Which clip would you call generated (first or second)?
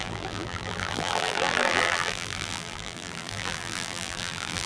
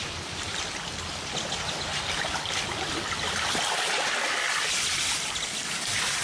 first